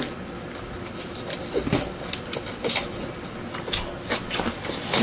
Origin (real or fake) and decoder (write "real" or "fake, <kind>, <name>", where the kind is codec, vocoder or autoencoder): real